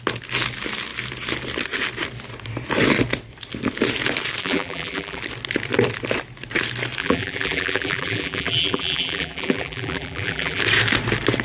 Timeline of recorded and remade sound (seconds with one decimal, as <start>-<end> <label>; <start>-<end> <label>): 0.0-4.4 recorded; 4.4-5.2 remade; 5.2-7.0 recorded; 7.0-10.6 remade; 10.6-11.4 recorded